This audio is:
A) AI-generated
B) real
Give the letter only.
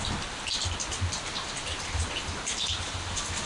B